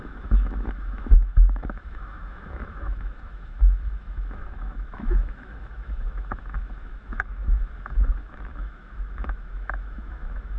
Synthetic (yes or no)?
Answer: yes